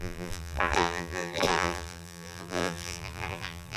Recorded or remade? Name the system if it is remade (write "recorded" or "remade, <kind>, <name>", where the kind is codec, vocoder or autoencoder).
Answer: remade, vocoder, BigVGAN v2